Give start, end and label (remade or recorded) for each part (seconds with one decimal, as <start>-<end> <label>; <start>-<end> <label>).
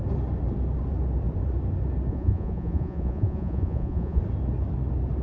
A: 0.0-2.1 recorded; 2.1-4.2 remade; 4.2-5.2 recorded